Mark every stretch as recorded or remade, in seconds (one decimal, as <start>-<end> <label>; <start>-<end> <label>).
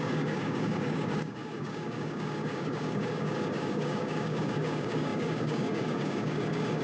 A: 0.0-6.8 remade